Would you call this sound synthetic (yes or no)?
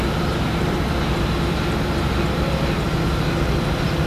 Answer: no